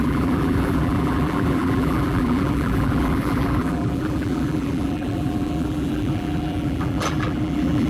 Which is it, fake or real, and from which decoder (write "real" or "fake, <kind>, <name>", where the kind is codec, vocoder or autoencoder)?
fake, vocoder, BigVGAN v2